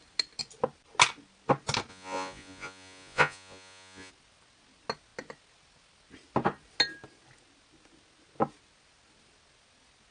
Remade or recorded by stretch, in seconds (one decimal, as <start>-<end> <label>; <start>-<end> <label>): 0.0-1.9 recorded; 1.9-4.1 remade; 4.1-10.1 recorded